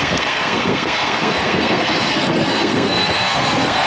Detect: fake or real fake